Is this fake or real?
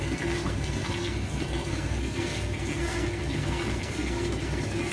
fake